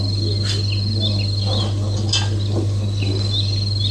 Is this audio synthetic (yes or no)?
no